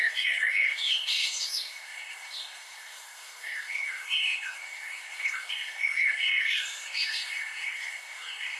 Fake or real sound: fake